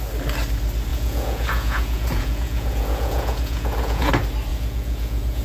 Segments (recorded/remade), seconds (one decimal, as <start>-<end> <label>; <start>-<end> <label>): 0.0-0.9 recorded; 0.9-4.1 remade; 4.1-4.5 recorded; 4.5-5.4 remade